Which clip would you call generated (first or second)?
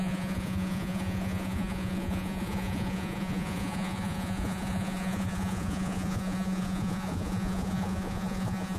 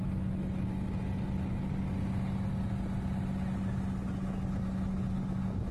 first